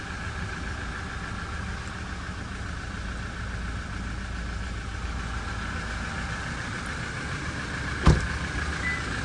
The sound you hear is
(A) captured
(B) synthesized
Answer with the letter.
A